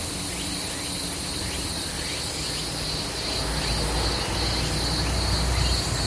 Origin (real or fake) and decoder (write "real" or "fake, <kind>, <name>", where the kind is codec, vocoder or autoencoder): real